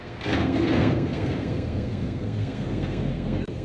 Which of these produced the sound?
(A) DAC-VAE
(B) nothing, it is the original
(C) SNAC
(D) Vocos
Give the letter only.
C